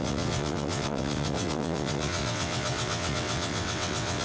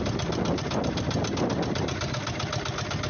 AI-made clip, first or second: first